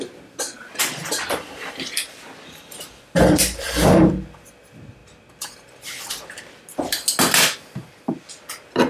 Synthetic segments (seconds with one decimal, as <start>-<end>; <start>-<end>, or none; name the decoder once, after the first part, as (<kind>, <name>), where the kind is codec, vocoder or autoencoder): 1.0-4.1 (vocoder, BigVGAN v2)